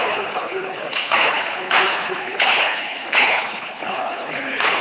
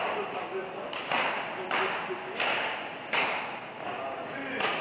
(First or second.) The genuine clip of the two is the second